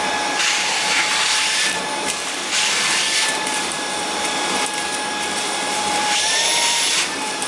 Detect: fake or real fake